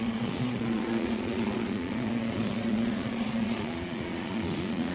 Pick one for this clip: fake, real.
fake